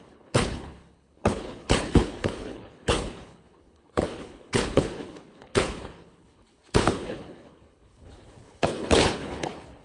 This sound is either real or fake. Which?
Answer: fake